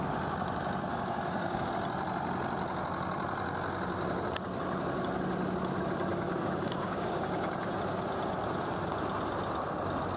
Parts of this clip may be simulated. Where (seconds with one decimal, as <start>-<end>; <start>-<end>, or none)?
0.9-1.7; 6.1-7.5

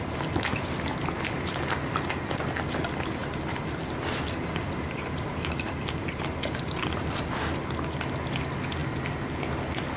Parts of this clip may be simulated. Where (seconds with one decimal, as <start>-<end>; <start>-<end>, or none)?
none

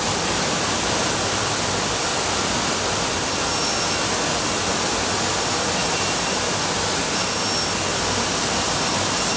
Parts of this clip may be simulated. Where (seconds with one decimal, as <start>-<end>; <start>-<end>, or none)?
none

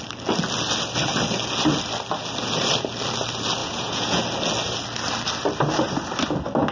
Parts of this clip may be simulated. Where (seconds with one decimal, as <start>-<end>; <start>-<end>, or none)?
3.6-4.2